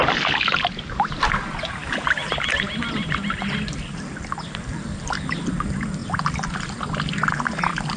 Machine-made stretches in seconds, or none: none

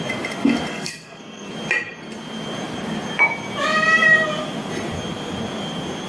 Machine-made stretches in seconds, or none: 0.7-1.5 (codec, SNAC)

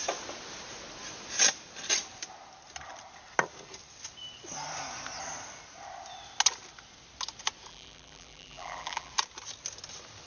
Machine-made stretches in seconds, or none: 7.7-9.1 (vocoder, BigVGAN v2)

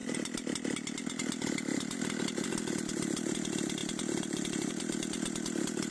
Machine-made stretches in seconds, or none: none

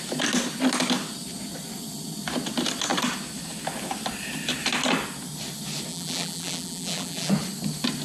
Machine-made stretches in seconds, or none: 5.9-7.3 (vocoder, BigVGAN v2)